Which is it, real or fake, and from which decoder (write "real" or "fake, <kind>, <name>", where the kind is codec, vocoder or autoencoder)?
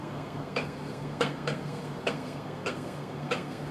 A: fake, codec, SNAC